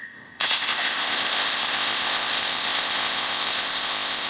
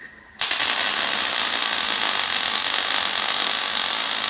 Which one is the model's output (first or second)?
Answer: first